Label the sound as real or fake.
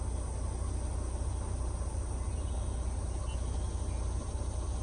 real